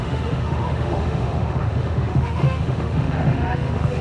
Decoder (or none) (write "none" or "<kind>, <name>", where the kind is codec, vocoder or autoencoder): autoencoder, DAC-VAE